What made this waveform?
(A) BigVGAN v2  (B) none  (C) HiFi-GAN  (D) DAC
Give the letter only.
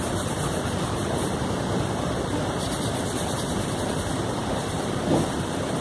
A